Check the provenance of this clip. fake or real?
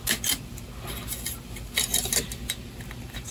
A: real